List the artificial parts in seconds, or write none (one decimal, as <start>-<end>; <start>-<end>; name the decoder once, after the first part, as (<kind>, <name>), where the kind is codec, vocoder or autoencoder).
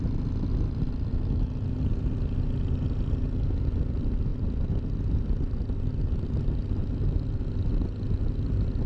none